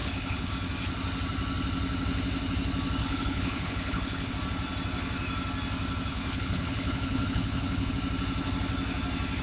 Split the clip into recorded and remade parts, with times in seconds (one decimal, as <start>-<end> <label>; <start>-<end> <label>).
0.0-0.5 remade; 0.5-3.0 recorded; 3.0-4.3 remade; 4.3-6.1 recorded; 6.1-7.9 remade; 7.9-9.4 recorded